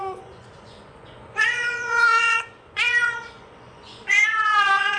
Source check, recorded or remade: remade